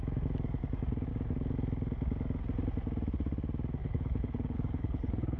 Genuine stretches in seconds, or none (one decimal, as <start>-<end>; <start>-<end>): 0.0-3.8